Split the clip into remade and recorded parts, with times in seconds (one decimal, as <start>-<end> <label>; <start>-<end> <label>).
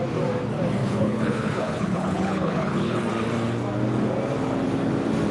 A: 0.0-0.8 recorded; 0.8-3.0 remade; 3.0-5.3 recorded